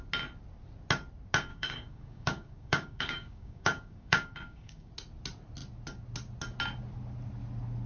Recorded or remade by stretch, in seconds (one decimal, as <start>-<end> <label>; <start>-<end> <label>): 0.0-1.5 recorded; 1.5-4.9 remade; 4.9-7.9 recorded